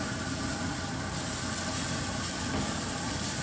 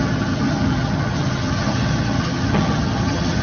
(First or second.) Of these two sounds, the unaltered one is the first